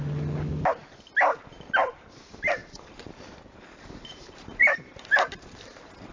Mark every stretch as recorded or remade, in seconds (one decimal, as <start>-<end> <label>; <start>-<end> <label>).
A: 0.0-2.6 recorded; 2.6-6.1 remade